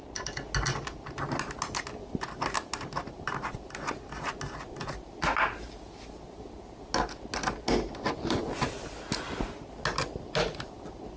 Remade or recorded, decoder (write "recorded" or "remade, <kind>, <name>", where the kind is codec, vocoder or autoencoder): recorded